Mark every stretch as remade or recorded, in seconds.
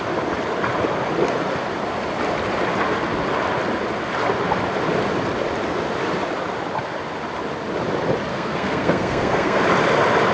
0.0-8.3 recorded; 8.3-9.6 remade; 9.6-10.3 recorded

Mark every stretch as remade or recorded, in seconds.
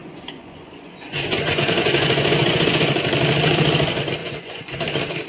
0.0-2.9 remade; 2.9-4.2 recorded; 4.2-4.8 remade; 4.8-5.3 recorded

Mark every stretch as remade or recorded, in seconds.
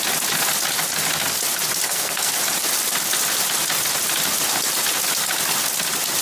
0.0-1.8 recorded; 1.8-2.3 remade; 2.3-6.2 recorded